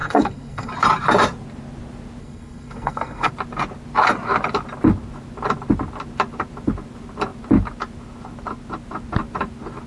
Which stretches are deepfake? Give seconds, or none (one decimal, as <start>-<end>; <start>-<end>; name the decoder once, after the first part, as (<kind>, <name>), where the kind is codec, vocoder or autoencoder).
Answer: 0.0-0.7 (codec, SNAC); 2.2-3.3